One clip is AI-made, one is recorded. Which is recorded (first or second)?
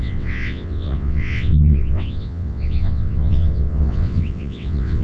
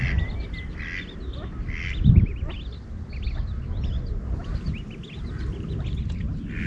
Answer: second